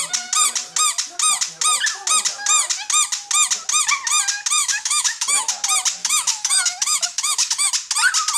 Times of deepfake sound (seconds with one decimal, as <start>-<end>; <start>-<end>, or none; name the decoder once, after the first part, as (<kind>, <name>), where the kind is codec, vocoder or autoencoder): 4.6-5.5 (autoencoder, DAC-VAE); 6.0-7.7